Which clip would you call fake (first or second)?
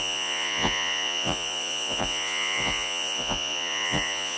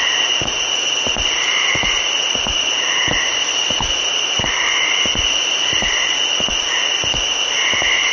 first